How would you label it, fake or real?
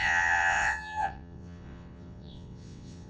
fake